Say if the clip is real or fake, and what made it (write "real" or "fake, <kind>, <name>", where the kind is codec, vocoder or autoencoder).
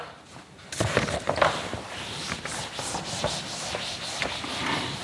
real